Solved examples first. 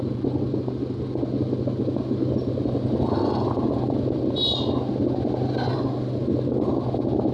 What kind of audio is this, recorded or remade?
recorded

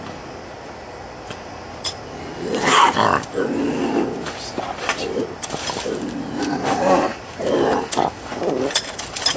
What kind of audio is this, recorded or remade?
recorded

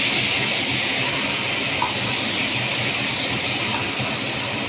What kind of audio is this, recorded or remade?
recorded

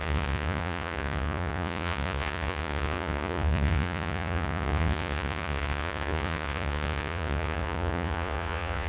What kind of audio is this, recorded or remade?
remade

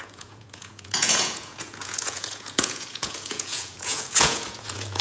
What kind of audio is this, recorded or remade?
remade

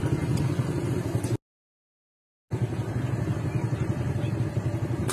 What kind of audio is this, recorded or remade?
recorded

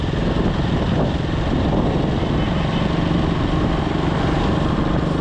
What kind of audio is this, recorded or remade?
recorded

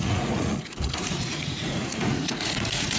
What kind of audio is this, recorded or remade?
remade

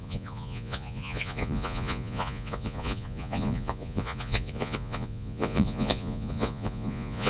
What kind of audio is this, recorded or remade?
remade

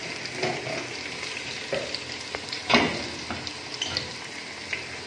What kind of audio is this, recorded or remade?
recorded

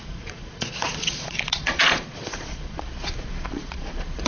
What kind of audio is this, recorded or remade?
remade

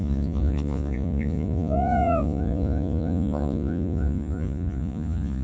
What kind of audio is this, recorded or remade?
remade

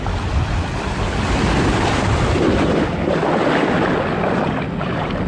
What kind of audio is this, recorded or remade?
recorded